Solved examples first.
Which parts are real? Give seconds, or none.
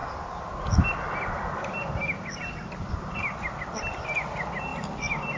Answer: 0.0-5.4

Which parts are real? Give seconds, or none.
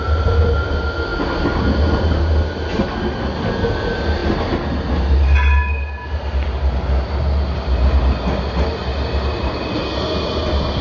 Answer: 0.0-10.8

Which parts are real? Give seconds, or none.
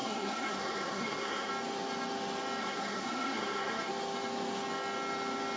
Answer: 1.5-2.6; 3.9-5.6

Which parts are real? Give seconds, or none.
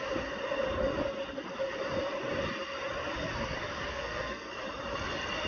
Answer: 0.0-3.9; 4.5-5.5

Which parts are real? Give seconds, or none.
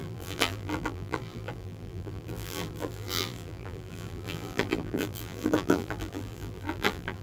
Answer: none